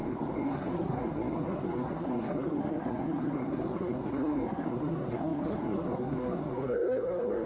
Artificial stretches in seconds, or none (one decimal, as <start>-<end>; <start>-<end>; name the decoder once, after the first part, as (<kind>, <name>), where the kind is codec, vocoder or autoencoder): 0.0-7.5 (codec, SNAC)